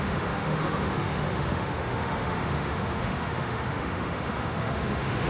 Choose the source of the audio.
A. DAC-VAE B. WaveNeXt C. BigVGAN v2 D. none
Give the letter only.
A